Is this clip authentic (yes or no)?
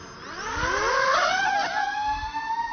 yes